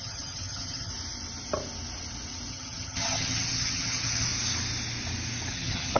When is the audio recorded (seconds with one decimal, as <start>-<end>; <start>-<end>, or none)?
0.9-2.5; 4.3-5.5